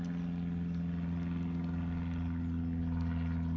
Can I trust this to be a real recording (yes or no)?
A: yes